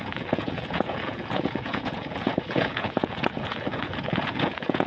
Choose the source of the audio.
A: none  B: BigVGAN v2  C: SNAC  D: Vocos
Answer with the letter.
D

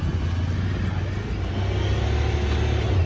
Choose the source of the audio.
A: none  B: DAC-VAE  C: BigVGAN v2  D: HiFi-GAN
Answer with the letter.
A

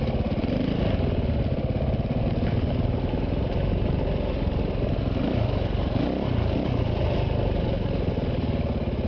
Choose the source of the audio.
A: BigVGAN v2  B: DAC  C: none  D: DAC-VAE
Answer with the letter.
C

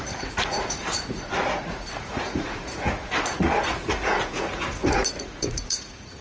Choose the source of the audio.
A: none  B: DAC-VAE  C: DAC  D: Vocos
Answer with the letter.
D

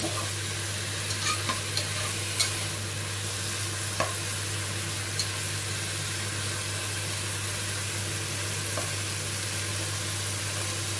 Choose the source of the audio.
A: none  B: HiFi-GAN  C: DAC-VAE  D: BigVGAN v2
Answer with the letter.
A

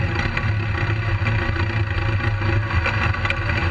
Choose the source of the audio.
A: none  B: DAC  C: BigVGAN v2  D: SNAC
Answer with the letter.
A